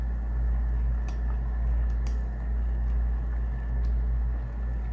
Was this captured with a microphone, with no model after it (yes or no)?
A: yes